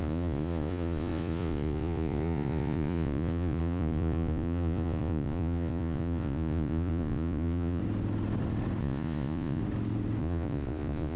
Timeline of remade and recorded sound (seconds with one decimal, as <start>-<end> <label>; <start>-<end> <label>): 0.0-7.8 remade; 7.8-8.8 recorded; 8.8-9.6 remade; 9.6-10.2 recorded; 10.2-11.2 remade